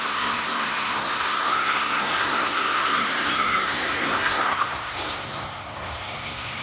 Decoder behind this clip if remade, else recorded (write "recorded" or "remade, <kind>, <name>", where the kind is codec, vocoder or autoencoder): remade, codec, SNAC